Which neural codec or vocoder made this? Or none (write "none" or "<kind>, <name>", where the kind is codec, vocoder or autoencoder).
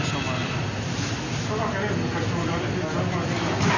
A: none